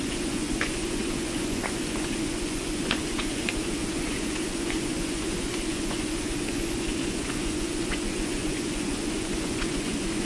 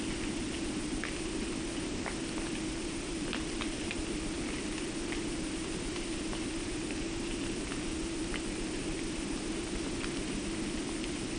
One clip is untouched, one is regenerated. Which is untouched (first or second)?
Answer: second